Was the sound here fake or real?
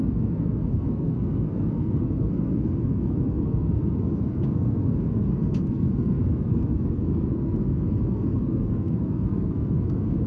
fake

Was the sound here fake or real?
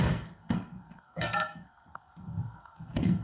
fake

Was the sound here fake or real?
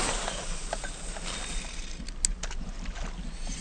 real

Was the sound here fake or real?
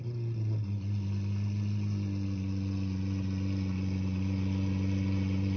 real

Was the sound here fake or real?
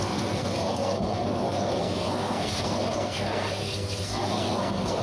fake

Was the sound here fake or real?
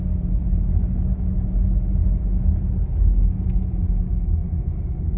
real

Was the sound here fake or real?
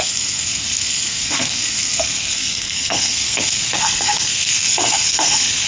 fake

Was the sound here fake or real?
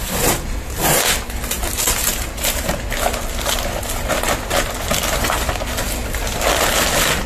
real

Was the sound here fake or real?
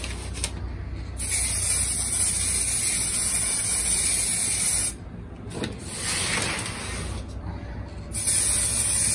real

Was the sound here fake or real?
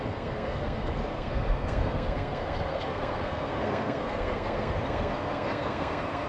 fake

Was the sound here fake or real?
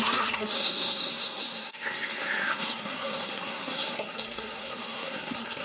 fake